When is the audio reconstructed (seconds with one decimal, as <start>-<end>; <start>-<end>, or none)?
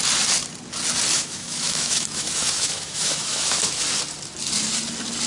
1.1-3.8